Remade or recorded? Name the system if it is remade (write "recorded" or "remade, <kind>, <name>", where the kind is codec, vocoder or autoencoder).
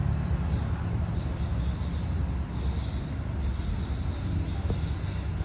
recorded